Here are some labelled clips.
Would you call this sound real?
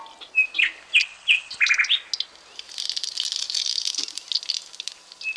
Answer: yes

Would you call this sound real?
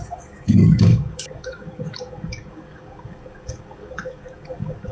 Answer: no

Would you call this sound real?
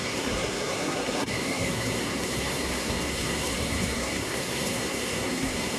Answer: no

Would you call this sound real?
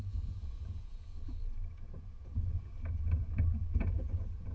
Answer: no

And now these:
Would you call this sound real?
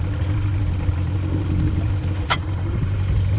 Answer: yes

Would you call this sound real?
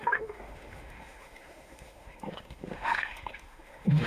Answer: no